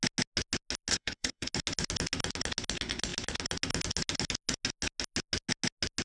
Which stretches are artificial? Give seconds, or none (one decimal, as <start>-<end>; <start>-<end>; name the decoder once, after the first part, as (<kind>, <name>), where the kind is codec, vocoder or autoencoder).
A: 0.9-1.5 (codec, HILCodec)